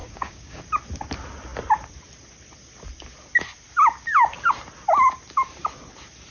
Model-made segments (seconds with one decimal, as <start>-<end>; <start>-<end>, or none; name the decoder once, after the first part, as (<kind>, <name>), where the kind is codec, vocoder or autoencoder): 0.0-0.6 (codec, DAC)